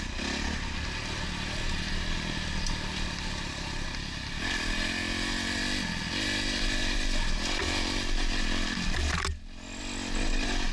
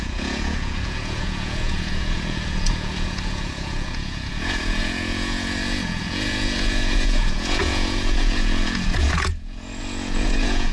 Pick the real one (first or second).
first